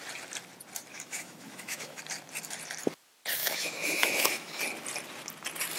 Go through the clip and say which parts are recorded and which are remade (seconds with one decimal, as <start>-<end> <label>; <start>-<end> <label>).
0.0-0.9 recorded; 0.9-2.0 remade; 2.0-3.4 recorded; 3.4-4.6 remade; 4.6-5.8 recorded